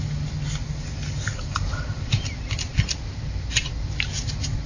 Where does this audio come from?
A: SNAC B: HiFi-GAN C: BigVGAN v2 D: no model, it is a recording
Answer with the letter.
D